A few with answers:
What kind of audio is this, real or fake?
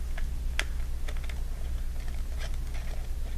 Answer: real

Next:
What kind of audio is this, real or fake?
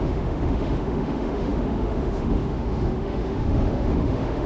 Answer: fake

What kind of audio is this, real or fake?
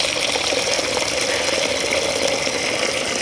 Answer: real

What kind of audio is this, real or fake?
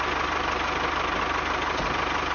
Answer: real